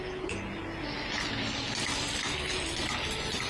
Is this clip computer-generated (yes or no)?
no